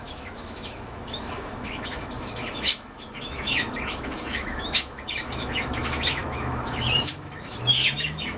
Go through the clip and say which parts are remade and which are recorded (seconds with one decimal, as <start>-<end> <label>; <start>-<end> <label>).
0.0-8.4 remade